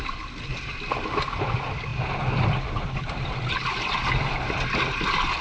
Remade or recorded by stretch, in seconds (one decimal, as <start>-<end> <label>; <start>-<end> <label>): 0.0-5.4 recorded